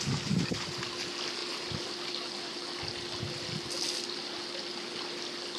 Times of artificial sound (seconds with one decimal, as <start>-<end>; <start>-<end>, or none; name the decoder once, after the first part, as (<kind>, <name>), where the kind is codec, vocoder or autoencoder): none